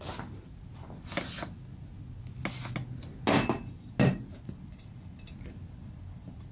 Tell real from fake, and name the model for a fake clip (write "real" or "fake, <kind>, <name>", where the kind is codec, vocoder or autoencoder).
real